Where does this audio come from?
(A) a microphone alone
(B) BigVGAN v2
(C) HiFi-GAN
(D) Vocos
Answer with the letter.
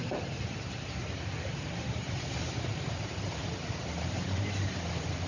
B